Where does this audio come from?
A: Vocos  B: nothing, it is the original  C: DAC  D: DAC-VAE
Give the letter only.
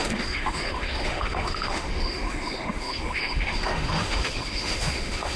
D